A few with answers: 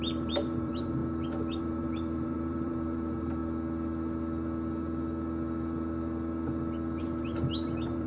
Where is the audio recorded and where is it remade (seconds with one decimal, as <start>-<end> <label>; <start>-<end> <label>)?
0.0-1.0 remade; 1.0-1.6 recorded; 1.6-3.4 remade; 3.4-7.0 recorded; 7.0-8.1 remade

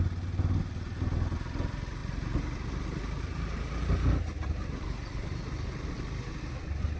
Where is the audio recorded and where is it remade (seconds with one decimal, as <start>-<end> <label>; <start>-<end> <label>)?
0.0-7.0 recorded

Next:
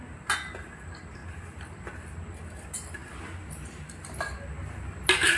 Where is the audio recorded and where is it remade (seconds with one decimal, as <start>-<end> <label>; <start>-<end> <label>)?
0.0-5.4 recorded

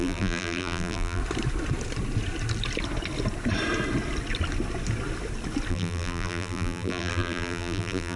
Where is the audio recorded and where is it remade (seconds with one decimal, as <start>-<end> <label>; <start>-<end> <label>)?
0.0-1.2 remade; 1.2-5.7 recorded; 5.7-8.2 remade

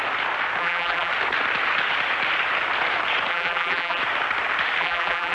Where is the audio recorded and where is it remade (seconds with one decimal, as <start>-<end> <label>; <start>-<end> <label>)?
0.0-0.6 recorded; 0.6-1.1 remade; 1.1-3.3 recorded; 3.3-4.0 remade; 4.0-4.8 recorded; 4.8-5.3 remade

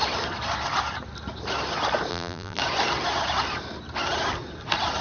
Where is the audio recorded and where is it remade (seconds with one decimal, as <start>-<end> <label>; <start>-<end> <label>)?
0.0-2.1 recorded; 2.1-2.6 remade; 2.6-5.0 recorded